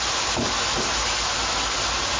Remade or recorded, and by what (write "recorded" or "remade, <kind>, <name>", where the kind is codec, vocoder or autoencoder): recorded